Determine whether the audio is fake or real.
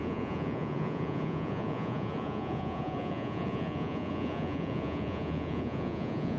fake